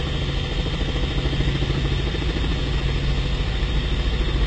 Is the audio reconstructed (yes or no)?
no